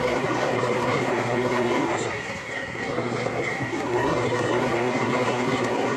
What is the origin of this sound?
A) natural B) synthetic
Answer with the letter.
B